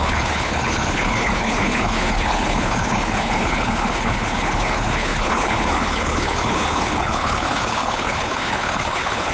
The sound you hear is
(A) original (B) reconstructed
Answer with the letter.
B